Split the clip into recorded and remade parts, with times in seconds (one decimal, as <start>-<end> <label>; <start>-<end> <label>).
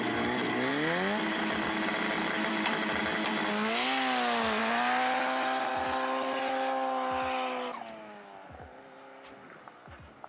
0.0-10.3 recorded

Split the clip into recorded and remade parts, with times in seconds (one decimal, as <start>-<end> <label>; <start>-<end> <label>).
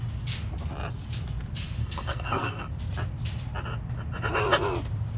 0.0-1.8 recorded; 1.8-2.7 remade; 2.7-5.2 recorded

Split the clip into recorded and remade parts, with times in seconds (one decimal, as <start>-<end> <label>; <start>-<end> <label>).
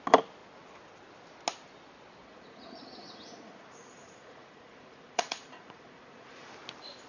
0.0-2.2 recorded; 2.2-6.5 remade; 6.5-7.1 recorded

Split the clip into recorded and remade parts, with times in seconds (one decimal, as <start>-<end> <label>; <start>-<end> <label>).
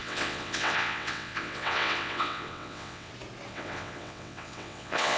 0.0-3.1 remade; 3.1-3.5 recorded; 3.5-5.2 remade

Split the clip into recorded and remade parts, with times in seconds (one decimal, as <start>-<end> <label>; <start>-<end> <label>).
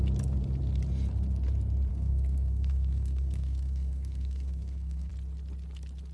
0.0-1.9 recorded; 1.9-5.1 remade; 5.1-6.1 recorded